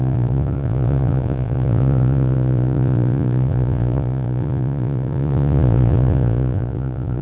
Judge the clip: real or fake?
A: fake